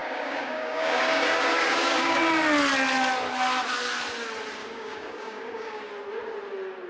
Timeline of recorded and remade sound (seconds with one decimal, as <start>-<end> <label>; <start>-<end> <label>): 0.0-2.2 remade; 2.2-4.6 recorded; 4.6-5.9 remade; 5.9-6.9 recorded